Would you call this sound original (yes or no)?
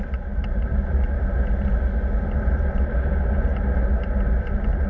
yes